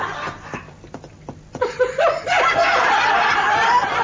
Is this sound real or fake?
fake